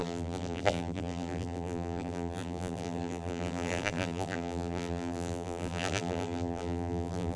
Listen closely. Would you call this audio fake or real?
fake